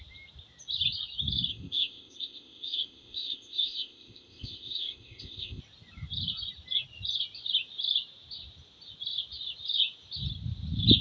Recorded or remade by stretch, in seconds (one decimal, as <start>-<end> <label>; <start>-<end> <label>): 0.0-1.5 recorded; 1.5-5.6 remade; 5.6-11.0 recorded